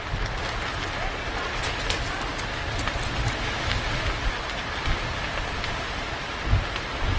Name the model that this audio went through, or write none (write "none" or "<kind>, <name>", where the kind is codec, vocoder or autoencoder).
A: none